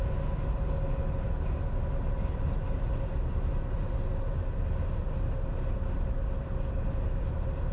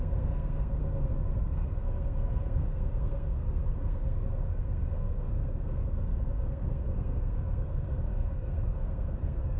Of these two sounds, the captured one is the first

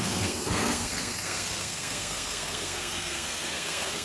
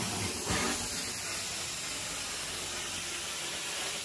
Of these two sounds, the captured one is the second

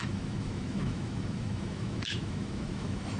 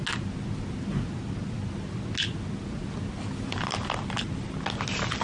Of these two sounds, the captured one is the second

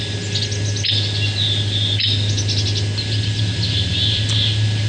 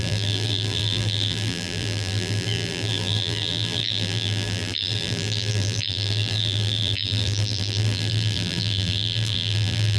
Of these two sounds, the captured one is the first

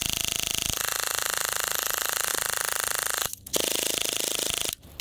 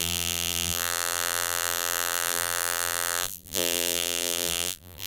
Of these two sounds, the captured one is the first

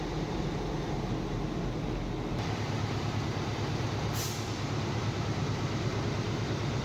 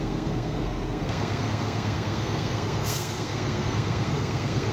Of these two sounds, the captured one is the first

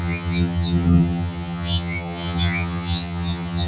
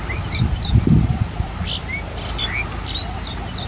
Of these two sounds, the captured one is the second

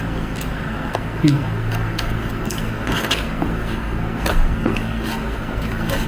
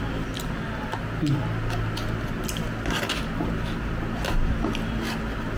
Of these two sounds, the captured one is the second